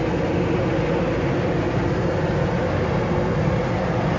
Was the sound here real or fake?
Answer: real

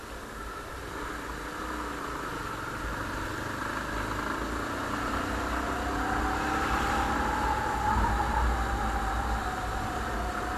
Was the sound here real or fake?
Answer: real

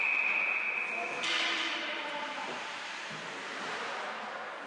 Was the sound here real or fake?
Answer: real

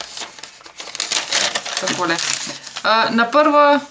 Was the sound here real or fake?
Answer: real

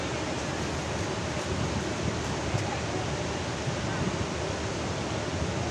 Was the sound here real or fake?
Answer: real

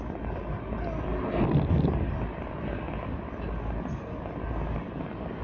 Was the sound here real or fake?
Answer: real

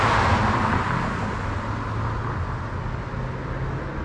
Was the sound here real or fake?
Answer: real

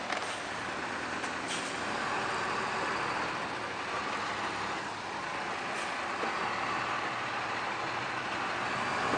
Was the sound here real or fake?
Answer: real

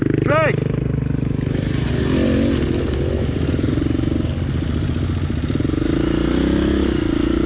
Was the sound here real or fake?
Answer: real